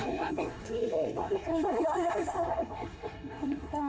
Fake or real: fake